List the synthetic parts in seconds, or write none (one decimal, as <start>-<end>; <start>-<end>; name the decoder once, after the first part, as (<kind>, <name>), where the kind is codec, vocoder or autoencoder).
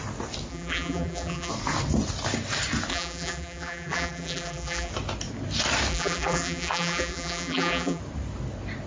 0.5-1.5 (vocoder, BigVGAN v2); 2.9-4.9; 5.9-8.0